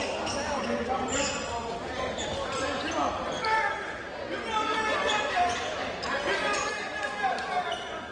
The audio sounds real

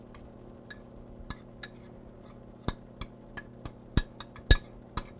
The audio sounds real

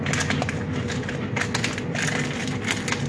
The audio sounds real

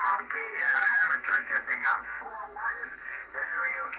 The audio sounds fake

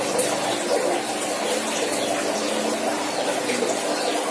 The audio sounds real